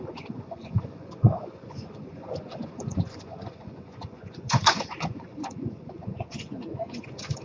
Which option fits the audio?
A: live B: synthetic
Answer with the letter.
B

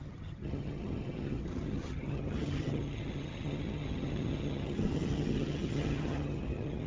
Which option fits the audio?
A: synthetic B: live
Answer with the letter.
A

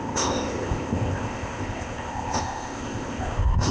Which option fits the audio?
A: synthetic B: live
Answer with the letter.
A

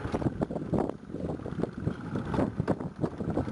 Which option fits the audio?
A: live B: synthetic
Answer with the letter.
A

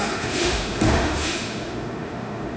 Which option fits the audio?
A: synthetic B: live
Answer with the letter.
A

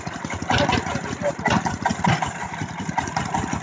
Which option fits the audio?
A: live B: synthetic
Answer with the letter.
A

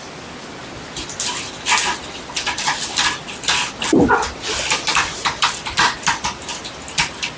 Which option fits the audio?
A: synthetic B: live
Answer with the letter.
B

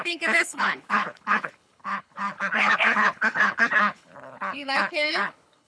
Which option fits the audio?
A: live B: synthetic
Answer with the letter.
B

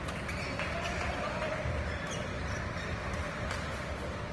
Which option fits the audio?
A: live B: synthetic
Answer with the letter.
A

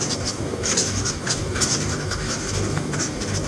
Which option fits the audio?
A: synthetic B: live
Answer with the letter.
A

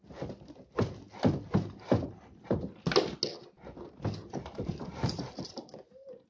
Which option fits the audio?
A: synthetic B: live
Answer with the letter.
B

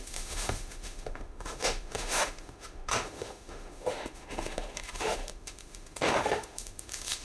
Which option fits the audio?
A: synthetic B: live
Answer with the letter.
A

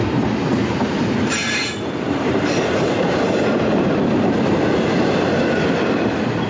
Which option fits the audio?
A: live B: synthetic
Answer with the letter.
B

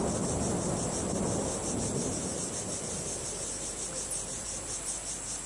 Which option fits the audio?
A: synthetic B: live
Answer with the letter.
B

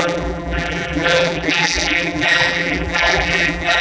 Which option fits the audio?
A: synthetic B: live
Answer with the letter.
A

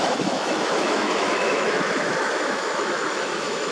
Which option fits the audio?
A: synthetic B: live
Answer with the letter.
A